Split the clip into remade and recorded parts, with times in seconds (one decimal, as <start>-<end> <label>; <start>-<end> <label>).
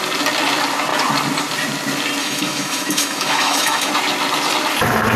0.0-2.2 recorded; 2.2-3.9 remade; 3.9-5.2 recorded